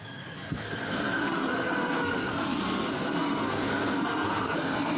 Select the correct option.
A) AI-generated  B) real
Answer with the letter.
A